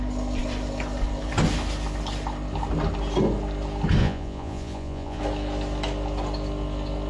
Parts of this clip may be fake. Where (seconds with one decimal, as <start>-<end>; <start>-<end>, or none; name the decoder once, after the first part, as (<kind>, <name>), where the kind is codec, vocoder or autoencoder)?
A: 4.0-5.2 (vocoder, Vocos)